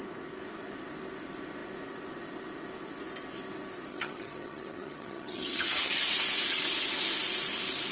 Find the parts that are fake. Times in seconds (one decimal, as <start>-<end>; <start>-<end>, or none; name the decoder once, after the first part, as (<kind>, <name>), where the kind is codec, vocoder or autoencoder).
3.9-6.0 (vocoder, HiFi-GAN)